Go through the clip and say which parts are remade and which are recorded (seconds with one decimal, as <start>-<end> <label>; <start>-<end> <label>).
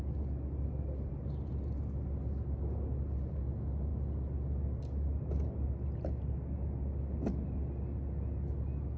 0.0-9.0 recorded